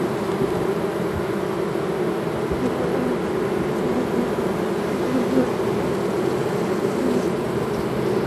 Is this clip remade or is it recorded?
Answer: recorded